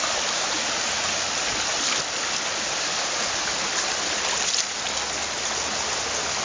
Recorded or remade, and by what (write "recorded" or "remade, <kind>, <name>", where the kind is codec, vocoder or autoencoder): recorded